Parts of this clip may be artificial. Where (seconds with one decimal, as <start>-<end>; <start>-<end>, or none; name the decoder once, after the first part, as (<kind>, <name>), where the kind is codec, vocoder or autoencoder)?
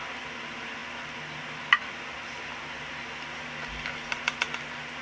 none